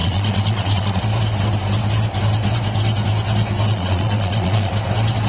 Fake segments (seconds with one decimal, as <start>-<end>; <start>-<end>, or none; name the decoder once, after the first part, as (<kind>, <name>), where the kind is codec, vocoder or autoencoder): 0.0-1.0 (vocoder, Vocos); 3.7-4.7